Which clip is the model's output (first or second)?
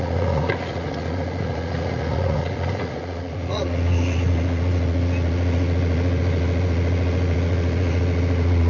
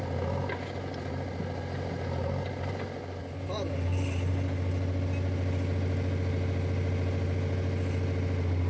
first